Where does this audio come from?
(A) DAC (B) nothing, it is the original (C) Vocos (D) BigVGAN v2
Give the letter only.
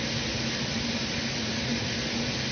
B